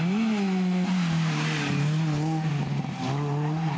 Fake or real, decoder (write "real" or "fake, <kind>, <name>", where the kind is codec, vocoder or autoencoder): real